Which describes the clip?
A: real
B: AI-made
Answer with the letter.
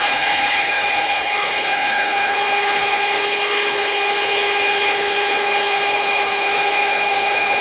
B